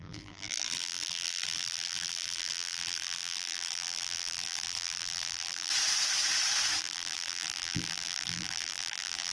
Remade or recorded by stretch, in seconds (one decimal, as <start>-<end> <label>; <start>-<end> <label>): 0.0-5.7 remade; 5.7-6.8 recorded; 6.8-9.3 remade